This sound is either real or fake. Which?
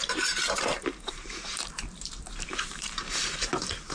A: fake